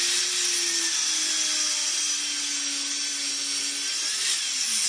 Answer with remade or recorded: recorded